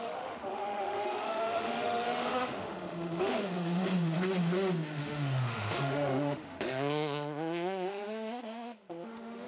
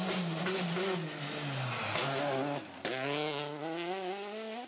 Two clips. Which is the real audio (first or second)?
second